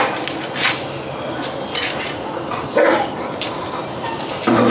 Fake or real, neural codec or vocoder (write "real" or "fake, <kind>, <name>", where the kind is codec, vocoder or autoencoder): real